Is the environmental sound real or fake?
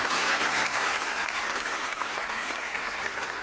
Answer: fake